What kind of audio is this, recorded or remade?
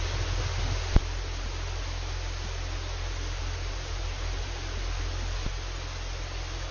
recorded